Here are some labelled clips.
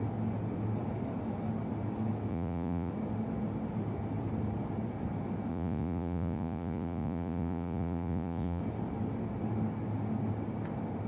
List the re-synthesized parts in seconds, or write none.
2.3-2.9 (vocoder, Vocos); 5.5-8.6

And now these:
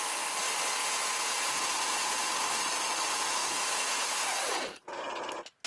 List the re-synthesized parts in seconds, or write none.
0.8-2.3 (vocoder, Vocos); 3.4-5.0

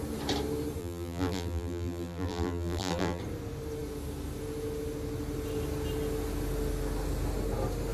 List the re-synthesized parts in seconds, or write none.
0.8-3.2 (vocoder, BigVGAN v2)

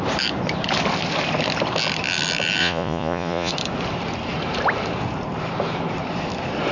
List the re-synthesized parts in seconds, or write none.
2.6-3.5 (vocoder, Vocos)

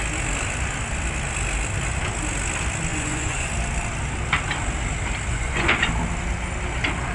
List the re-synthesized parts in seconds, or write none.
2.9-3.5 (vocoder, Vocos); 5.3-5.9